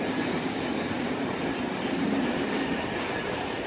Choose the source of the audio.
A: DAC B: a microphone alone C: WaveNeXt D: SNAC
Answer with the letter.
B